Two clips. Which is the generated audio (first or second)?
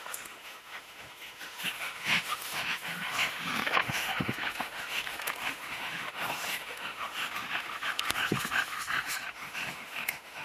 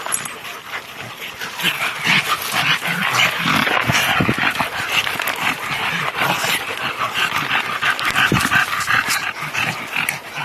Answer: first